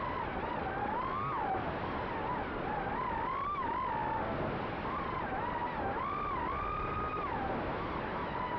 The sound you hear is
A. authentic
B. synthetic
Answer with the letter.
A